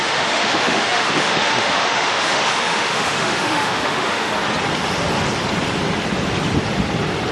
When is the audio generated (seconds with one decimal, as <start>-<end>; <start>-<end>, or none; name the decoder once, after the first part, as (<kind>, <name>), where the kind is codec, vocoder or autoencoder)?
0.0-4.3 (autoencoder, DAC-VAE)

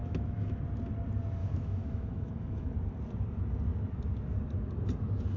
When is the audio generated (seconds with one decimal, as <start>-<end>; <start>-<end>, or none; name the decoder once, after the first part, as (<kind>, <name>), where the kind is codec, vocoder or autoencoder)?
0.0-0.6 (autoencoder, DAC-VAE); 1.4-2.7

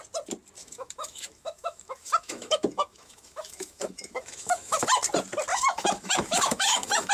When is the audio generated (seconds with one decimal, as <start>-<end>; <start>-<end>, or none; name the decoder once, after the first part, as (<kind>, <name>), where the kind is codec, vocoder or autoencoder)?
0.6-4.9 (autoencoder, DAC-VAE); 5.5-7.1

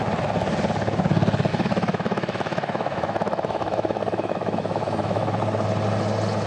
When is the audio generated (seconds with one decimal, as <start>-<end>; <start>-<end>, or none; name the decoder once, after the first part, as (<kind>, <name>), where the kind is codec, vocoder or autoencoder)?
1.5-5.4 (autoencoder, DAC-VAE)

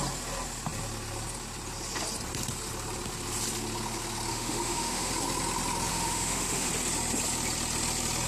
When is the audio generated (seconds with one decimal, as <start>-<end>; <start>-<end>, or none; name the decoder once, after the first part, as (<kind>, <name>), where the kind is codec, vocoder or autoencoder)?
4.3-5.1 (autoencoder, DAC-VAE); 5.9-6.7

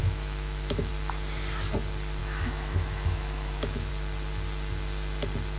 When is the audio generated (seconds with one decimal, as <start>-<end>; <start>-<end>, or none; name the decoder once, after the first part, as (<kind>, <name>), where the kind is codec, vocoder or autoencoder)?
0.0-0.9 (autoencoder, DAC-VAE); 2.2-3.9

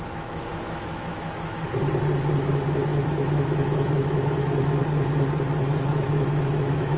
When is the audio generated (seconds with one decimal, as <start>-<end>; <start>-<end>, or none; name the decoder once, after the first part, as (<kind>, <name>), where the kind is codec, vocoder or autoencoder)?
0.0-1.6 (autoencoder, DAC-VAE); 2.5-4.8; 5.8-7.0